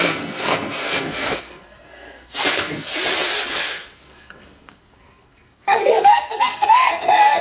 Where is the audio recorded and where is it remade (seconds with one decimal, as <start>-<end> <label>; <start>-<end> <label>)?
0.0-2.9 remade; 2.9-3.5 recorded; 3.5-7.4 remade